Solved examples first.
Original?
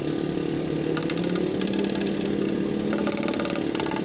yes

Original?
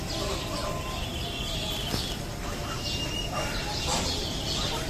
yes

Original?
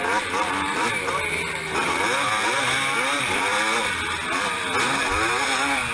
yes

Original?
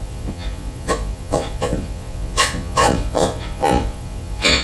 no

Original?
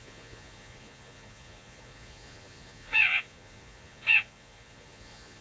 no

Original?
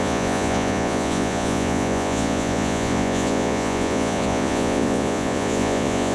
no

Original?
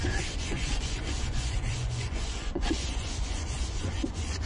no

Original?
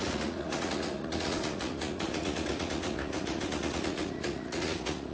no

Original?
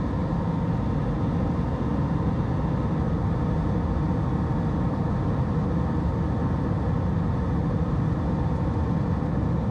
yes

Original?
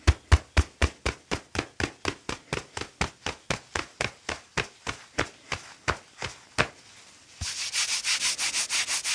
yes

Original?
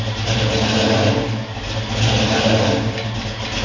yes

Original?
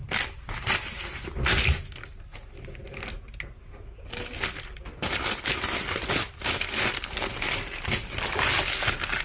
yes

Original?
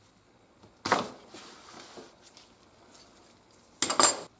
yes